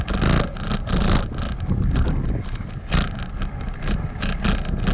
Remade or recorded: recorded